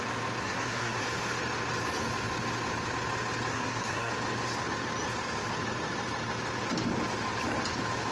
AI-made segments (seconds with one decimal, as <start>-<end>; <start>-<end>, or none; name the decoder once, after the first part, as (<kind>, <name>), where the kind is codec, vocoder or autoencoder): 0.4-1.0 (codec, SNAC); 3.5-4.1